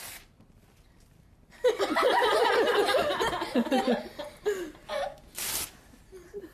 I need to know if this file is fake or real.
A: real